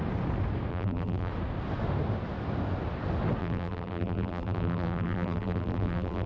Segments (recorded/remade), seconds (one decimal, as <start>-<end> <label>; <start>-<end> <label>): 0.0-0.7 recorded; 0.7-1.3 remade; 1.3-3.4 recorded; 3.4-6.3 remade